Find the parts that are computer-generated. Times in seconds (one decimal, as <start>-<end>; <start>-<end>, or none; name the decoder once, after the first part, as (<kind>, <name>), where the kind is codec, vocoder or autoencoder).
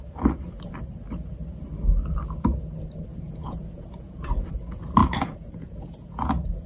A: 3.1-4.5 (vocoder, Vocos); 5.0-6.7